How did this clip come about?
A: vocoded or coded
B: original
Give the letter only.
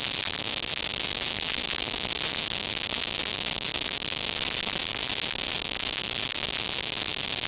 B